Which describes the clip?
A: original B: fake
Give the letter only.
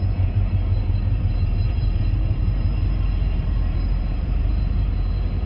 B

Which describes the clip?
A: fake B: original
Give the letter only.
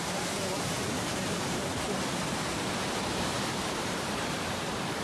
A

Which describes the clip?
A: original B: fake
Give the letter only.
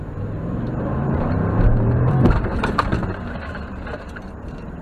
B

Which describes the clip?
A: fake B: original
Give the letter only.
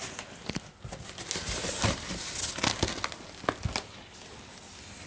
B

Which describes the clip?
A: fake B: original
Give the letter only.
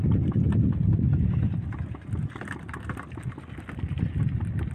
B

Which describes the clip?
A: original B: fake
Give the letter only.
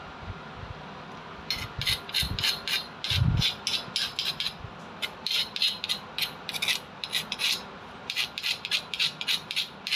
A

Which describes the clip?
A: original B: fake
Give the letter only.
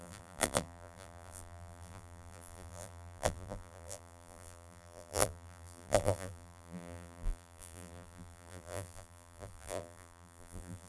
B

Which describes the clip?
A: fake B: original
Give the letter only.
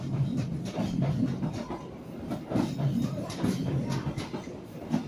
B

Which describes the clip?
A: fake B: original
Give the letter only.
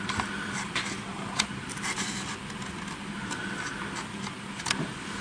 B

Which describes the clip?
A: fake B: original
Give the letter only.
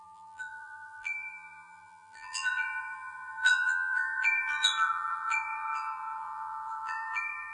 A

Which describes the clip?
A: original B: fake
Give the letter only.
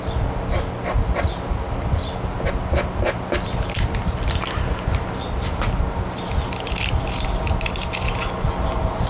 A